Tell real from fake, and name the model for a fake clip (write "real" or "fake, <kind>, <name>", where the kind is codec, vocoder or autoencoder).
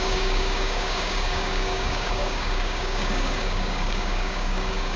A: fake, codec, DAC